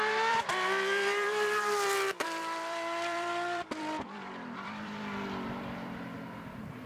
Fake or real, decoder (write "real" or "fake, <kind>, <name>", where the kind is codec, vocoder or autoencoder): fake, vocoder, BigVGAN v2